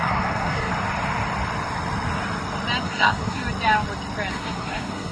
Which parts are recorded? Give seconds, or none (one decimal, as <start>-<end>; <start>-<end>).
0.7-2.8; 3.4-4.3